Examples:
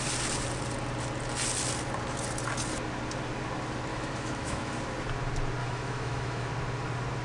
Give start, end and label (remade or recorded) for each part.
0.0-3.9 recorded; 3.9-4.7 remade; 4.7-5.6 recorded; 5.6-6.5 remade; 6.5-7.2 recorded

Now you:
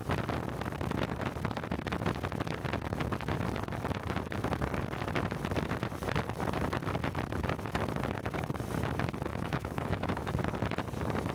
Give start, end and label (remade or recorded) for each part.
0.0-9.3 recorded; 9.3-10.3 remade; 10.3-11.3 recorded

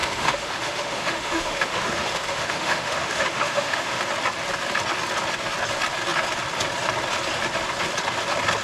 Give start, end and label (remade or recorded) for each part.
0.0-4.0 remade; 4.0-8.6 recorded

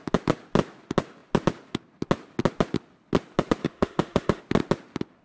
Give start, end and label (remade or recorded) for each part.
0.0-3.6 recorded; 3.6-4.4 remade; 4.4-5.2 recorded

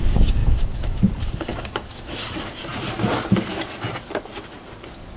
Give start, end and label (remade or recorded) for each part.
0.0-0.4 recorded; 0.4-1.1 remade; 1.1-1.5 recorded; 1.5-2.1 remade; 2.1-5.2 recorded

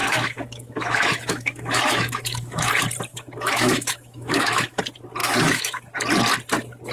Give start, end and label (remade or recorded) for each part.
0.0-2.7 remade; 2.7-3.1 recorded; 3.1-4.8 remade; 4.8-5.2 recorded; 5.2-5.8 remade; 5.8-6.9 recorded

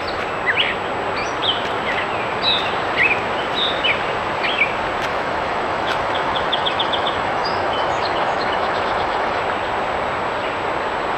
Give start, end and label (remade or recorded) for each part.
0.0-5.1 recorded; 5.1-9.4 remade; 9.4-11.2 recorded

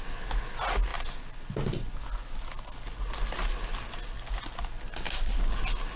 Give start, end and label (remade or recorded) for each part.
0.0-6.0 recorded